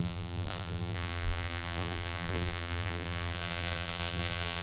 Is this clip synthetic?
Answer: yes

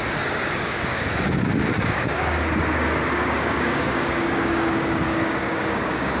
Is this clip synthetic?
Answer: yes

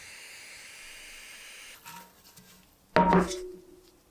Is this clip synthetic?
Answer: no